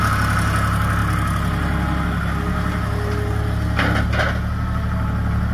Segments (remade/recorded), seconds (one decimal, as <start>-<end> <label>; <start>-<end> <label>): 0.0-5.5 recorded